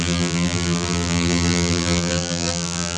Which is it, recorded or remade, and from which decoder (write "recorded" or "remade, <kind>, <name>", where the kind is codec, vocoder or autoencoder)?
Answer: remade, vocoder, BigVGAN v2